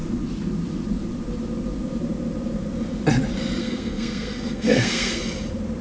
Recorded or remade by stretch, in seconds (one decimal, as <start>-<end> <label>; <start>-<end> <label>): 0.0-3.6 recorded; 3.6-5.2 remade; 5.2-5.8 recorded